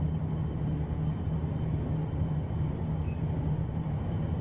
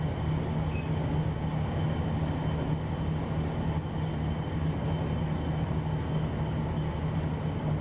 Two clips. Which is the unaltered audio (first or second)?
second